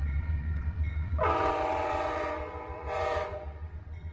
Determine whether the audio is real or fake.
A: fake